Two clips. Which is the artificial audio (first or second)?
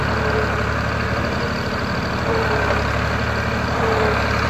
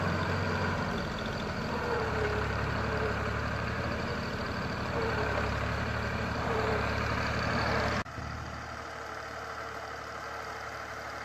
second